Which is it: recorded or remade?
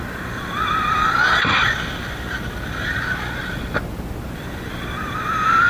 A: recorded